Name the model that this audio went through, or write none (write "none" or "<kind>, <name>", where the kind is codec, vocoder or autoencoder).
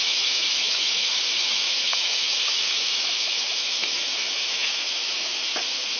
autoencoder, DAC-VAE